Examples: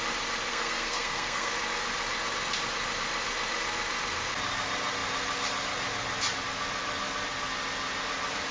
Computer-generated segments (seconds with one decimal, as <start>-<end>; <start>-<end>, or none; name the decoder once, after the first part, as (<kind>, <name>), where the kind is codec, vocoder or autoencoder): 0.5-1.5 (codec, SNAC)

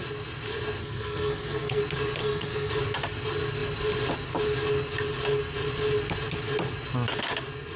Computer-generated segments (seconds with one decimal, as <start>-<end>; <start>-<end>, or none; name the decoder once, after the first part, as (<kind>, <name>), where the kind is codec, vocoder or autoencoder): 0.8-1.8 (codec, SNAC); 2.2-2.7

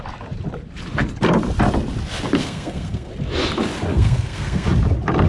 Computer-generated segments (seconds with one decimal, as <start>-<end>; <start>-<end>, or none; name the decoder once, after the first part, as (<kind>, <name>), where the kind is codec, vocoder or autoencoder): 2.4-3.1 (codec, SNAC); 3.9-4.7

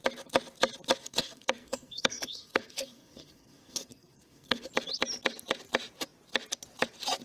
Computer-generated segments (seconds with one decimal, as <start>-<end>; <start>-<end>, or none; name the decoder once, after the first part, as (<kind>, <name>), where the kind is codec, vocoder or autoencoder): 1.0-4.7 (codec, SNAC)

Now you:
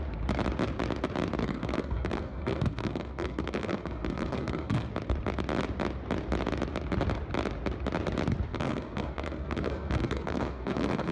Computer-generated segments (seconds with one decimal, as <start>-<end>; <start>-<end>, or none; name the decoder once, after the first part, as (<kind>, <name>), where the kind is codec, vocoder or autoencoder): 1.4-4.9 (codec, SNAC); 8.5-11.1